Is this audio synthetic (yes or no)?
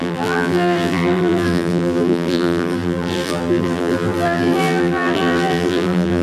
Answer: yes